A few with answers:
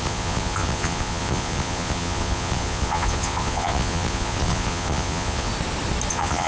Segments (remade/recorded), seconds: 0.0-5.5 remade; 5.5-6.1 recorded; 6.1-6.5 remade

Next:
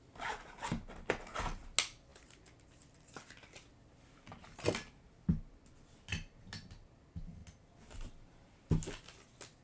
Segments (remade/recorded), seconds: 0.0-9.6 recorded

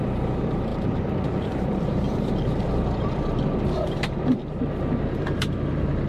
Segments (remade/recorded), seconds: 0.0-4.4 remade; 4.4-5.1 recorded; 5.1-6.1 remade

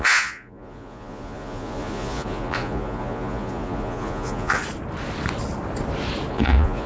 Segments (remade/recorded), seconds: 0.0-4.6 remade; 4.6-6.3 recorded; 6.3-6.9 remade

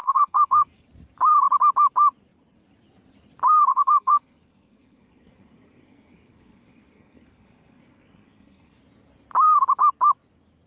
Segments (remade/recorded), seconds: 0.0-0.7 remade; 0.7-3.7 recorded; 3.7-8.8 remade; 8.8-10.7 recorded

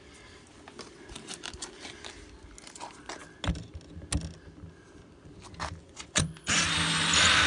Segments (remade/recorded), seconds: 0.0-5.8 recorded; 5.8-6.6 remade; 6.6-7.5 recorded